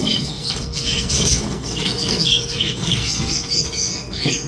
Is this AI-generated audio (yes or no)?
yes